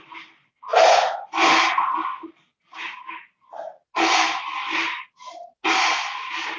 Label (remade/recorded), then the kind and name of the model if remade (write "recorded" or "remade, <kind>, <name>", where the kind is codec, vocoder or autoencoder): recorded